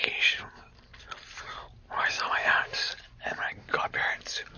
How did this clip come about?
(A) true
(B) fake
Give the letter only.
A